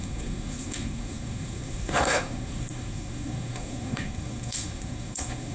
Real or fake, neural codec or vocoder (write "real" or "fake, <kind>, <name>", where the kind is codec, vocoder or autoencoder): fake, codec, SNAC